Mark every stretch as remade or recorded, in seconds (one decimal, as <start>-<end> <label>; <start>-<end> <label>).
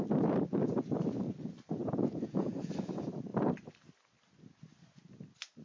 0.0-1.8 recorded; 1.8-2.7 remade; 2.7-5.6 recorded